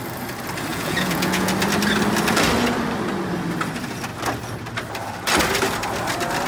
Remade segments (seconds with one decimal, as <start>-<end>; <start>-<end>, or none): 0.7-1.5